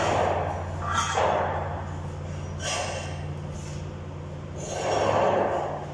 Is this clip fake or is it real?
real